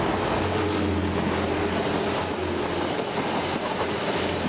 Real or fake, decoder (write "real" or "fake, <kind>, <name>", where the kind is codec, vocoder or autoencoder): real